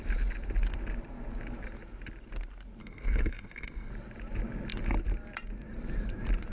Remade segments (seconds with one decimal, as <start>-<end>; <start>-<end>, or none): 2.8-3.9